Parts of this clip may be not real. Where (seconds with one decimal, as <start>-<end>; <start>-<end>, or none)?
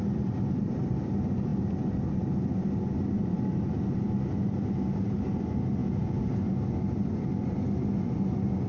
5.8-6.4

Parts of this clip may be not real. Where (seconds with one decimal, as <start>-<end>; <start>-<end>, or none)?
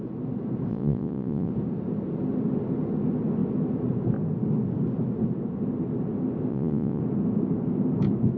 0.7-1.5; 6.5-7.0